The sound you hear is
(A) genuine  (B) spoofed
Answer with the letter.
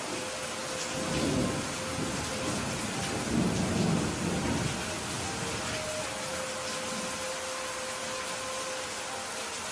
A